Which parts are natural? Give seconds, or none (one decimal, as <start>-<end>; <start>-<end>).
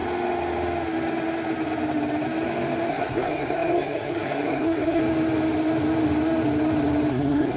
0.0-2.9; 5.0-7.1